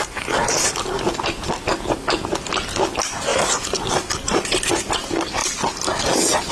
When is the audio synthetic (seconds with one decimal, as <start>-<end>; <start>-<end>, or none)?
3.3-4.7; 5.4-6.5